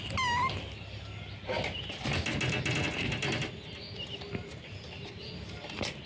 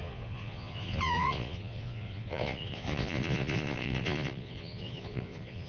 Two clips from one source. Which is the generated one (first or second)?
second